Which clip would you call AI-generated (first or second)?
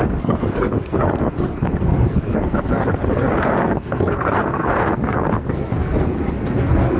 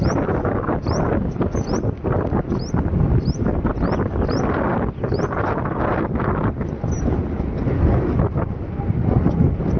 first